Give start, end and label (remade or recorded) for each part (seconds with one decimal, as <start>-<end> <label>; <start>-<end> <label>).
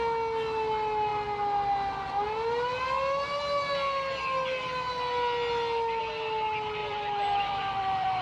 0.0-6.8 recorded; 6.8-8.2 remade